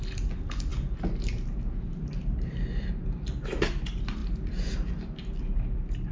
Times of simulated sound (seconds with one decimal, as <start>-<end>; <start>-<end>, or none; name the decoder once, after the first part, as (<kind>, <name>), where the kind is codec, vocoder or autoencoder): none